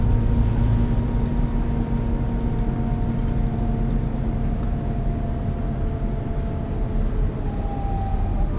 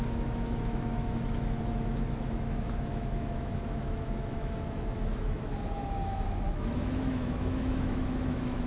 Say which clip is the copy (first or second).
second